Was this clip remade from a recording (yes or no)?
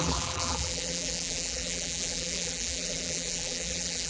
yes